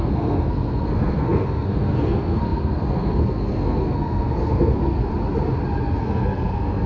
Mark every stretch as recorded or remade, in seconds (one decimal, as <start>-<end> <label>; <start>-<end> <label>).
0.0-5.1 remade; 5.1-6.0 recorded; 6.0-6.9 remade